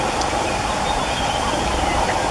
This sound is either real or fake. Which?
real